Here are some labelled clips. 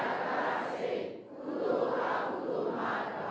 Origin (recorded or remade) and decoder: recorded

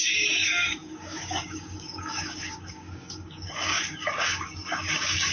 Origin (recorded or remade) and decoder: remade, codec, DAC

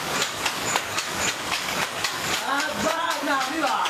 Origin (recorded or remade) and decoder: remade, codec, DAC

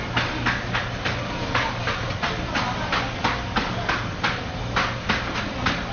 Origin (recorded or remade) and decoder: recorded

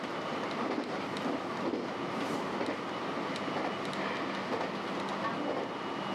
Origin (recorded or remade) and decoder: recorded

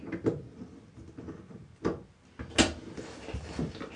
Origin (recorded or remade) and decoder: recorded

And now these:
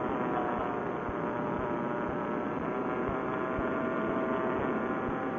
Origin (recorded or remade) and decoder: recorded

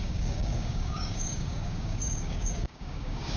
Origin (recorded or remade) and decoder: remade, codec, DAC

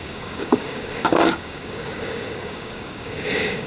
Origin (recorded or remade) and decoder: remade, codec, DAC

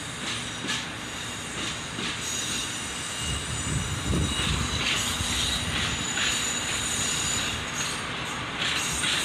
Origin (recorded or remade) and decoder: recorded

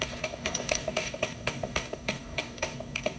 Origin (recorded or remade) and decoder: remade, codec, DAC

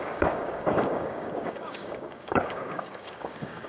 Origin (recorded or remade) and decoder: remade, codec, DAC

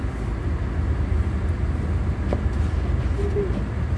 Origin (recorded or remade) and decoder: recorded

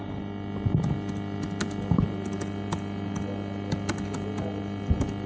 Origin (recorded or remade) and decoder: recorded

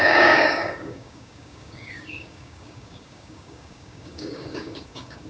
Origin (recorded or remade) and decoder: remade, codec, DAC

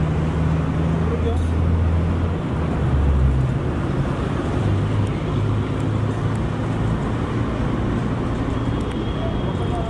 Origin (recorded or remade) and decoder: recorded